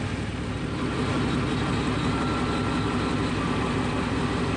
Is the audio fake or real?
real